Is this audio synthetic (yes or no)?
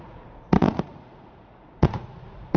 yes